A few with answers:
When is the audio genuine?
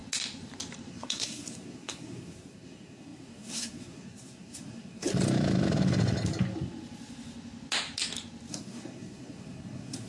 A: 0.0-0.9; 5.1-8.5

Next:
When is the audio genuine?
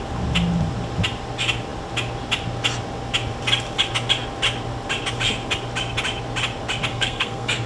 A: 0.0-6.9